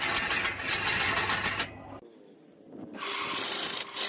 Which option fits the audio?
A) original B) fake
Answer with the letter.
A